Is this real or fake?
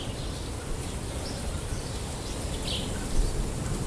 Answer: real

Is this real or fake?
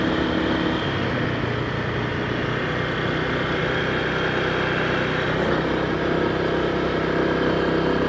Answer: real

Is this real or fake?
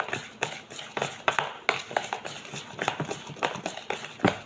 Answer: real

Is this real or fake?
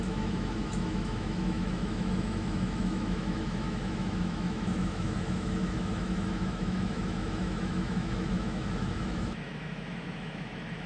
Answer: fake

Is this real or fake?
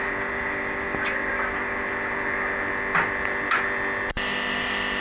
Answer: real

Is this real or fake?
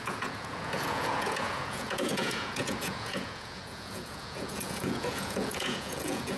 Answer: fake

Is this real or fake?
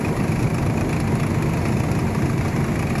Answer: real